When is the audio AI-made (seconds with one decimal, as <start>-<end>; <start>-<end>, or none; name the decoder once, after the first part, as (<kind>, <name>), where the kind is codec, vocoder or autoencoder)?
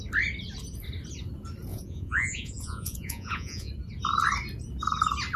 1.7-3.7 (vocoder, Vocos)